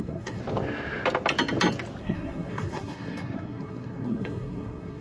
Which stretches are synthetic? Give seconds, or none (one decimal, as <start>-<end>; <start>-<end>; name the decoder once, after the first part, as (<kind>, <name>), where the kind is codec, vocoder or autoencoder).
0.0-0.4 (codec, SNAC); 2.0-5.0